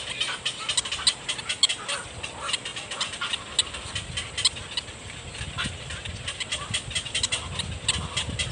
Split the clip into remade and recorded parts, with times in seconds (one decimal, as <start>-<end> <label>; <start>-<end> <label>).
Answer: 0.0-8.5 recorded